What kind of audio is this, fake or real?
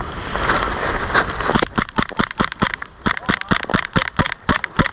real